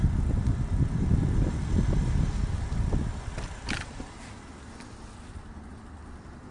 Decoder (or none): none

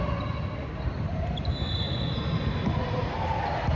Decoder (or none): none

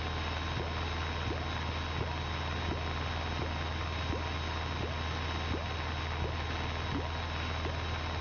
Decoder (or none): none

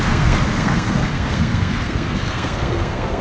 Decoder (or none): codec, SNAC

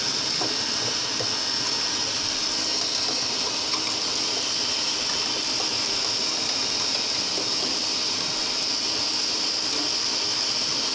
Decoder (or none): none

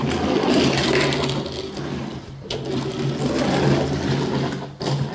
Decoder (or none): none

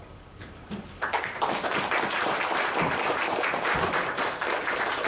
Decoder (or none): vocoder, BigVGAN v2